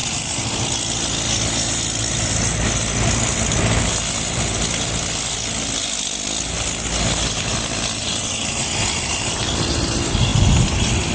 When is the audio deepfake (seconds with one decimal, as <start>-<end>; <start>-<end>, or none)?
none

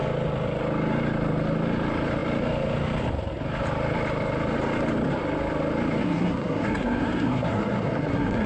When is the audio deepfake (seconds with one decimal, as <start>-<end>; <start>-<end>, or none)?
6.0-8.5

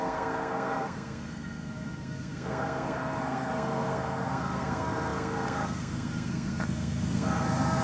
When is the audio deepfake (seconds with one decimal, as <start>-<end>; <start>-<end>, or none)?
0.0-7.8